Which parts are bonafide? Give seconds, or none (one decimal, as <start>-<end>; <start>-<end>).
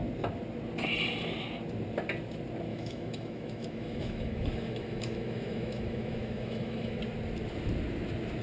0.0-2.7; 7.0-8.4